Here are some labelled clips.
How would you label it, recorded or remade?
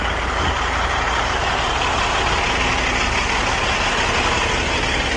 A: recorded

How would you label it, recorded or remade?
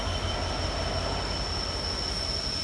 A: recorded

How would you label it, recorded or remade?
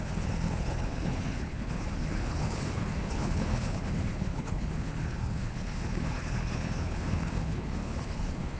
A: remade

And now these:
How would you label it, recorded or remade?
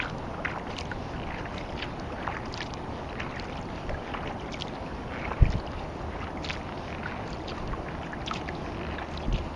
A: recorded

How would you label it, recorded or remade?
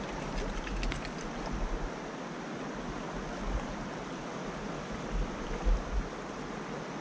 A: recorded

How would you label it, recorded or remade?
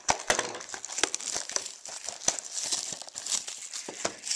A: recorded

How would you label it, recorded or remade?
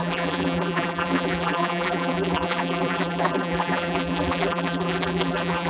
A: remade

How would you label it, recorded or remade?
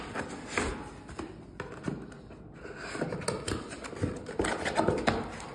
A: recorded